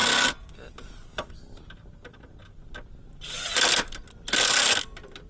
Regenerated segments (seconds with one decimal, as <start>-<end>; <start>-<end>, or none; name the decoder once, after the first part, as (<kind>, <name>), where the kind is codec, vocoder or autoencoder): none